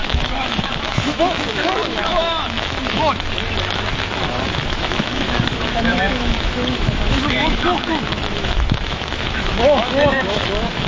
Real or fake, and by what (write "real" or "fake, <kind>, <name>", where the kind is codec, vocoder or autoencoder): fake, autoencoder, DAC-VAE